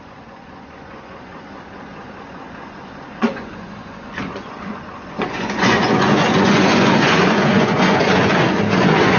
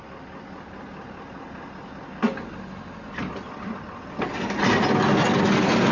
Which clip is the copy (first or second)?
first